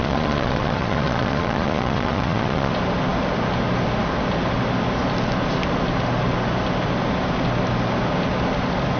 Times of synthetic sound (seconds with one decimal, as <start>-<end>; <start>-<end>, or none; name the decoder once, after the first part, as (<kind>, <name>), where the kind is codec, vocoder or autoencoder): 0.0-2.7 (vocoder, Vocos)